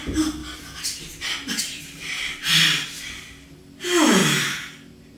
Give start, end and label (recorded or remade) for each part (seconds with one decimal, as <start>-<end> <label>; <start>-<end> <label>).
0.0-0.4 remade; 0.4-1.6 recorded; 1.6-2.4 remade; 2.4-3.8 recorded; 3.8-4.2 remade; 4.2-5.2 recorded